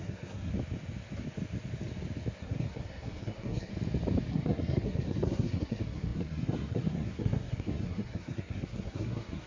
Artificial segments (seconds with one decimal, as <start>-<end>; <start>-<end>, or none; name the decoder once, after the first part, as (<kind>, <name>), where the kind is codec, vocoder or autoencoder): 0.0-0.5 (codec, SNAC); 2.4-3.7; 4.3-9.5